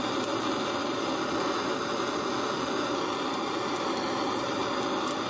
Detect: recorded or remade recorded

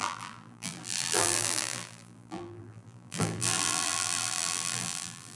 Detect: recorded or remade remade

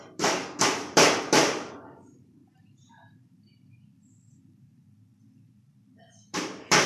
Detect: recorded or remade remade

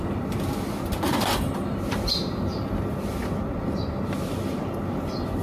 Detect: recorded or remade recorded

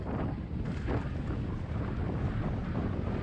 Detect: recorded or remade remade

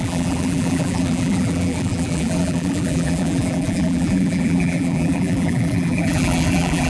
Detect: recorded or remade remade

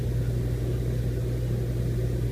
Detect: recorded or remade recorded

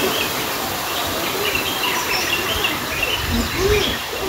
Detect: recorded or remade remade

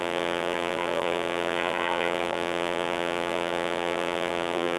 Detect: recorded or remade remade